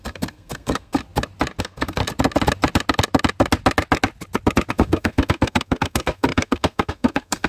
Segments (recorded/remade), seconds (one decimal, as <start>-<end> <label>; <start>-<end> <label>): 0.0-1.0 remade; 1.0-1.6 recorded; 1.6-2.0 remade; 2.0-4.7 recorded; 4.7-7.5 remade